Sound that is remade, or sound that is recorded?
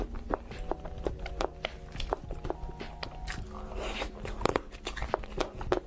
recorded